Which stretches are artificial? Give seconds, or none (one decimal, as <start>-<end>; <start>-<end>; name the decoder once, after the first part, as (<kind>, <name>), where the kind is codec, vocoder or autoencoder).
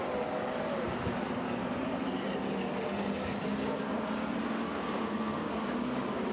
4.8-5.5 (codec, SNAC)